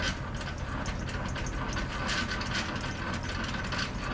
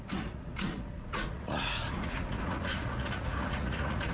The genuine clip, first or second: first